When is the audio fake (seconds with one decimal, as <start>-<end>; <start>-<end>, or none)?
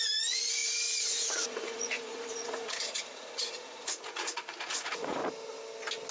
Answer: 0.0-5.2